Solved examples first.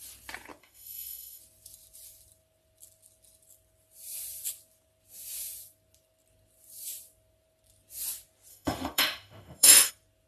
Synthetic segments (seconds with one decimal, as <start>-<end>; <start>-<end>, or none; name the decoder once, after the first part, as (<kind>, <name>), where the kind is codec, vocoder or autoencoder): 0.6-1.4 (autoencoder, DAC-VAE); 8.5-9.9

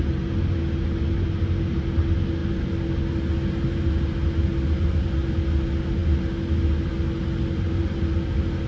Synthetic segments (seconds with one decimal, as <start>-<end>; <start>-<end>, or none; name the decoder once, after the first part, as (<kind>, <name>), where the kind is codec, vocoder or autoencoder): none

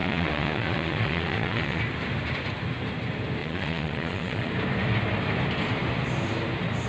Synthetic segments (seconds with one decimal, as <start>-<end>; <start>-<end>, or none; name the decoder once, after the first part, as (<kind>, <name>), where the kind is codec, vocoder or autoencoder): 0.0-1.8 (vocoder, Vocos); 3.4-4.5